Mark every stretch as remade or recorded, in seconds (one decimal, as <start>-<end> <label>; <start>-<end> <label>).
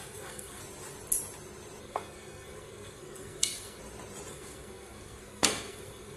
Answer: 0.0-0.6 remade; 0.6-1.8 recorded; 1.8-3.8 remade; 3.8-4.3 recorded; 4.3-6.2 remade